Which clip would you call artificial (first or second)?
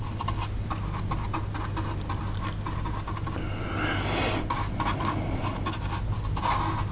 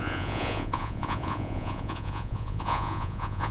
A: second